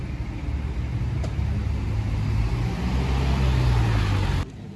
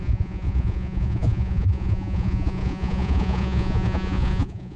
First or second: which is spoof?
second